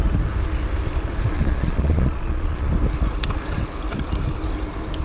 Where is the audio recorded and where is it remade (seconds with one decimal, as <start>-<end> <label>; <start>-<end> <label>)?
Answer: 0.0-1.3 recorded; 1.3-2.7 remade; 2.7-5.0 recorded